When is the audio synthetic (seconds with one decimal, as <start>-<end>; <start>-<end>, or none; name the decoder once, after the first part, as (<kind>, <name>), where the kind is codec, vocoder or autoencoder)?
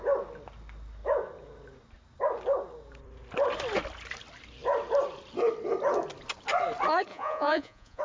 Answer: 7.1-8.0 (vocoder, Vocos)